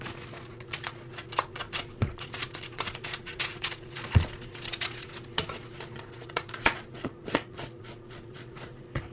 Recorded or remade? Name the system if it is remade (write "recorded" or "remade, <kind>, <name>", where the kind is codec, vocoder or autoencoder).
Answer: remade, vocoder, Vocos